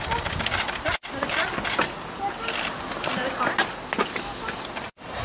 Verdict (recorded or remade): recorded